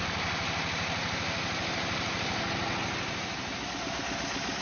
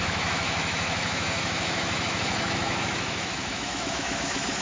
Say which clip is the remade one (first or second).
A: second